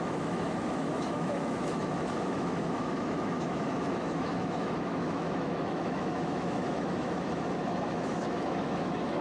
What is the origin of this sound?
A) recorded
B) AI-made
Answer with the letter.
B